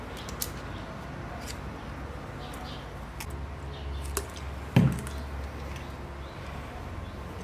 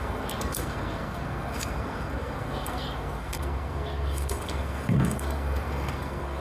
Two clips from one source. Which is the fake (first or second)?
second